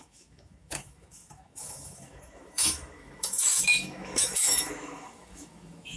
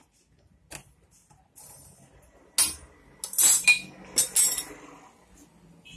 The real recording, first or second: second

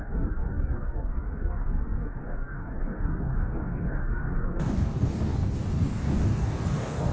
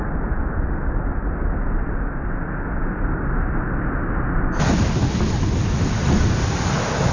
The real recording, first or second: second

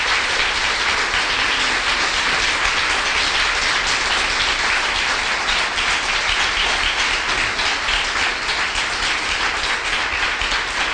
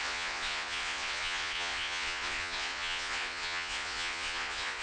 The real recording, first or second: first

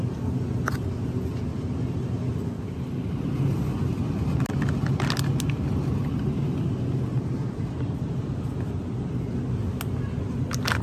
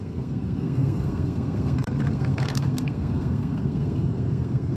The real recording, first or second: first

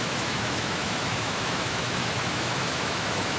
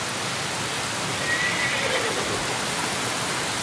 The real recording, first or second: second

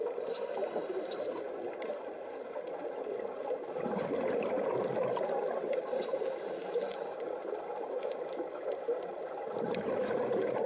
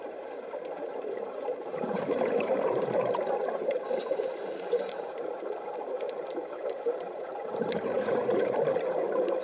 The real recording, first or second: first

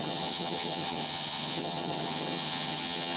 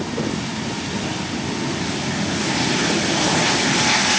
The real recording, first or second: second